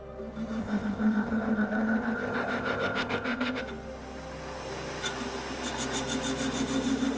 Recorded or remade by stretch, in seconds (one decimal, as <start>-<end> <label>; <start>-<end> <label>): 0.0-0.6 recorded; 0.6-3.6 remade; 3.6-7.2 recorded